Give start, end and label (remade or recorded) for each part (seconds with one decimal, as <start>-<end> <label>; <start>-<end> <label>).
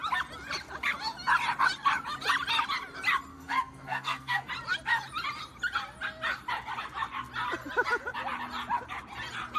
0.0-3.3 recorded; 3.3-4.5 remade; 4.5-9.6 recorded